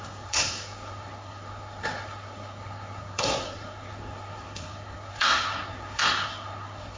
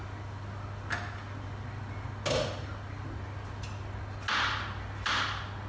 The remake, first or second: first